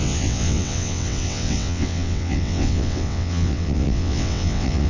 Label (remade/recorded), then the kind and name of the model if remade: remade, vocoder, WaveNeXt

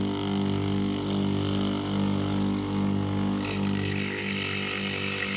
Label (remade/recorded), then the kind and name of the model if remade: recorded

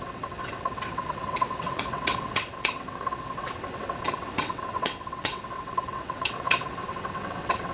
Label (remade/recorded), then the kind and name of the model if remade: remade, vocoder, WaveNeXt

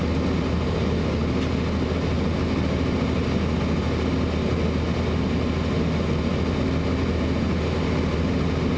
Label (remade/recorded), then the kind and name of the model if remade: recorded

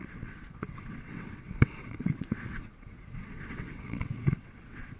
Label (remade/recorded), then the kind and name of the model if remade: remade, vocoder, WaveNeXt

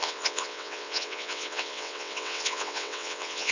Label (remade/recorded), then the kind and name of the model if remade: remade, vocoder, WaveNeXt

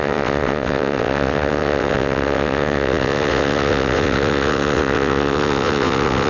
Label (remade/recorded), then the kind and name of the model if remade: remade, vocoder, WaveNeXt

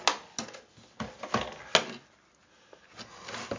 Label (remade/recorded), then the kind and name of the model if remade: recorded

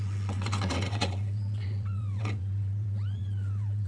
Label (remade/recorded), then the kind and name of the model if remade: remade, vocoder, WaveNeXt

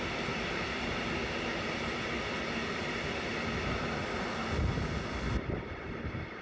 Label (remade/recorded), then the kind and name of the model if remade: recorded